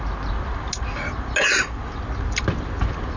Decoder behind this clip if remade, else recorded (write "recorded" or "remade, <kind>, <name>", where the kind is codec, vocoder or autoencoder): recorded